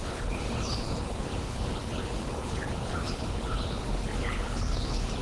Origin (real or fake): fake